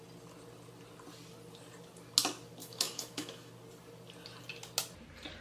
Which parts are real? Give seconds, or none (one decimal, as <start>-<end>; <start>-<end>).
0.0-2.6; 3.5-5.4